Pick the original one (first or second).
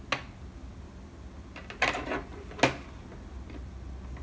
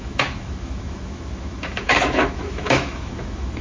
first